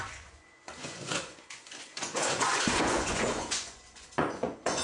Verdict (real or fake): fake